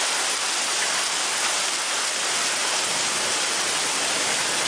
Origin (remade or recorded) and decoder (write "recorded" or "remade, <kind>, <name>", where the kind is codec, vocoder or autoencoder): recorded